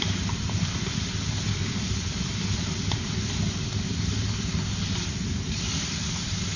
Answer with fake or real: fake